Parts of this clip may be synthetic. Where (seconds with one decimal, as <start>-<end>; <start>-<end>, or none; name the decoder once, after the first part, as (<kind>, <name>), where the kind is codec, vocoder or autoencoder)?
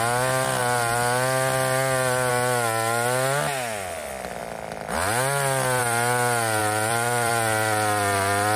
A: 6.6-7.3 (vocoder, BigVGAN v2)